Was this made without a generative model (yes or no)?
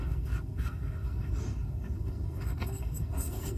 no